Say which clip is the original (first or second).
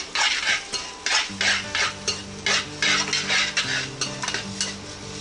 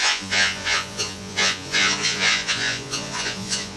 first